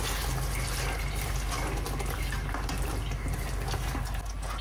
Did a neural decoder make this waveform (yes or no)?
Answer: no